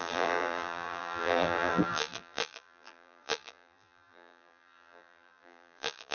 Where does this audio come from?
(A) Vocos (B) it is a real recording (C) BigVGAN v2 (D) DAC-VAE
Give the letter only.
C